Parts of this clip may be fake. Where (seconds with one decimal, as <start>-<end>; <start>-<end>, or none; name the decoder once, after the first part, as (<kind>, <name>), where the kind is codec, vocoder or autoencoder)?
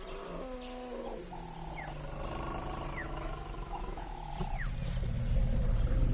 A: 3.0-4.3 (autoencoder, DAC-VAE)